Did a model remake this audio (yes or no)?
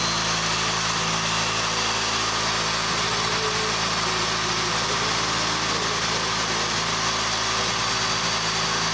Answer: no